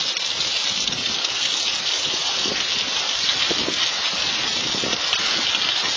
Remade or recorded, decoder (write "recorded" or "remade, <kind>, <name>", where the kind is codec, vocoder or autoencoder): recorded